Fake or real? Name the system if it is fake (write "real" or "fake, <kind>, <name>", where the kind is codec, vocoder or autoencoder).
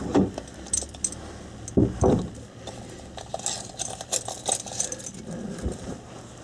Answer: real